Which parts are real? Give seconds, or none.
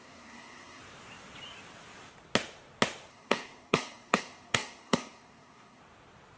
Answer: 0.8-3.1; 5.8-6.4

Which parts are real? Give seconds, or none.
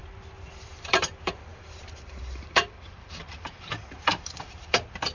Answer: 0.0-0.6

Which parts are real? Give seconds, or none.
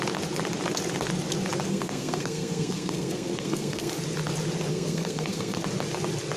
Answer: 0.0-1.7; 3.9-4.7; 5.6-6.4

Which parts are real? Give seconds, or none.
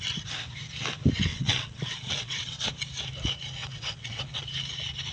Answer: 0.0-1.3; 2.7-3.6; 4.4-5.1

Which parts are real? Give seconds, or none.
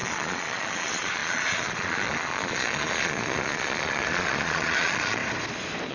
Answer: 5.2-5.9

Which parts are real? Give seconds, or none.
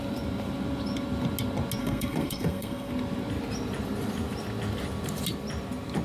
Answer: 0.0-1.8; 2.9-6.0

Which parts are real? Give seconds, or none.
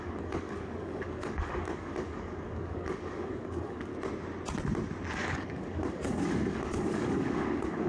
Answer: 3.9-5.1